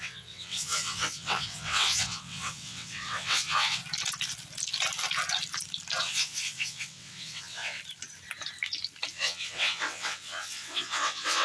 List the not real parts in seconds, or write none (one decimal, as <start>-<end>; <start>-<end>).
0.0-3.8; 6.0-7.8; 9.1-11.4